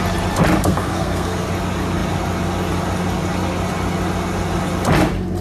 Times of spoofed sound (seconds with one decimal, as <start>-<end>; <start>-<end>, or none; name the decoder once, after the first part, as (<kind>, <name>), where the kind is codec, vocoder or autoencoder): 0.6-1.5 (codec, SNAC)